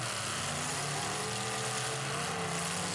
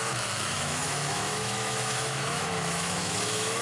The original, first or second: first